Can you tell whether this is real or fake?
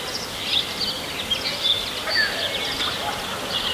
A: real